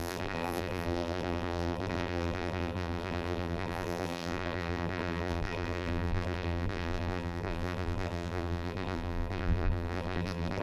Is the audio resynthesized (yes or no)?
yes